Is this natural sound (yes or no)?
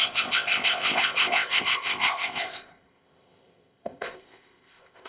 no